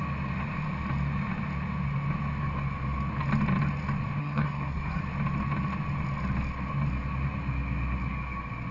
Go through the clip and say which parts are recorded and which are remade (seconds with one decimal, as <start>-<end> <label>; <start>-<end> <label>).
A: 0.0-4.2 recorded; 4.2-5.0 remade; 5.0-8.7 recorded